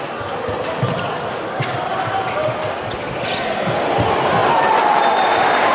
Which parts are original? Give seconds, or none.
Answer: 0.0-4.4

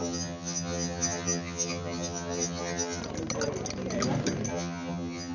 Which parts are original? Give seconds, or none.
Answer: 3.0-4.5

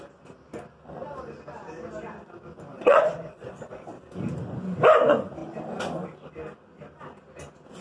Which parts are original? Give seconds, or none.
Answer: 0.0-2.7; 4.0-7.8

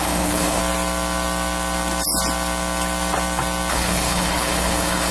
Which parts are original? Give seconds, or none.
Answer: 0.6-3.7

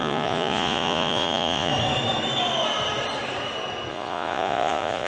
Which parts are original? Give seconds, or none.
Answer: 1.7-3.9

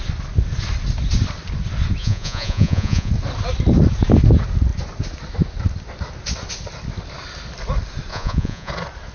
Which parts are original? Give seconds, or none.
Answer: 0.0-2.0; 3.1-8.1; 8.7-9.1